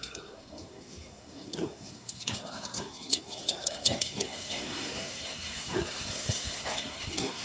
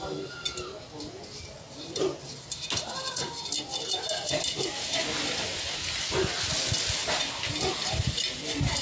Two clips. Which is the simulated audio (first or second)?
first